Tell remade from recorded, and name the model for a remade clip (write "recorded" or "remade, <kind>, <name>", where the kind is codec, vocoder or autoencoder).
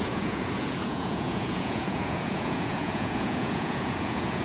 remade, vocoder, Vocos